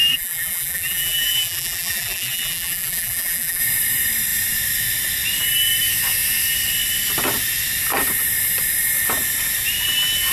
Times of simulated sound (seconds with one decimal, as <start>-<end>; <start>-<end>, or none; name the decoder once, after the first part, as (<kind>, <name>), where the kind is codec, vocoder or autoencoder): 0.0-3.6 (vocoder, BigVGAN v2)

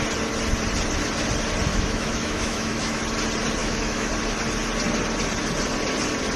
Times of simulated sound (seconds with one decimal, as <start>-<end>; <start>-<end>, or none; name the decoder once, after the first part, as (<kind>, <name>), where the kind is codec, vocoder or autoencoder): 1.7-3.0 (autoencoder, DAC-VAE); 3.6-4.1

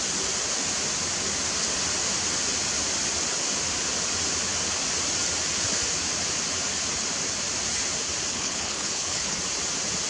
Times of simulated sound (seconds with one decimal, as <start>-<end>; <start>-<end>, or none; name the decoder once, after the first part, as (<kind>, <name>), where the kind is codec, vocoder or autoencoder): 8.3-9.4 (codec, HILCodec)